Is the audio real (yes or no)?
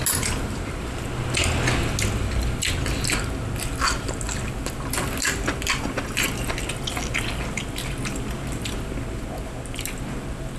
yes